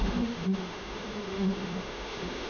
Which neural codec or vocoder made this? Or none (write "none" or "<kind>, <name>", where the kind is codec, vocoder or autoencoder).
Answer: autoencoder, DAC-VAE